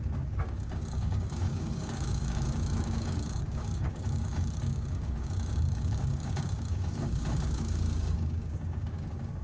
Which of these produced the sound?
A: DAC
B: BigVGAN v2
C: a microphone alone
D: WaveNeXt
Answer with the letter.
A